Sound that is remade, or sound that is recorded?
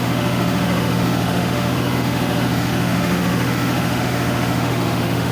remade